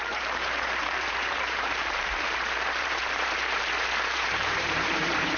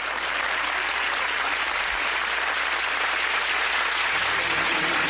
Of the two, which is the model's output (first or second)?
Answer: first